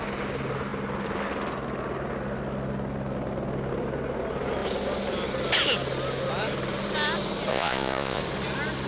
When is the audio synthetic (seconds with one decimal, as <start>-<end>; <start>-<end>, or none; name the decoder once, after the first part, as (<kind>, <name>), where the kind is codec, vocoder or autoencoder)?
7.5-8.2 (vocoder, Vocos)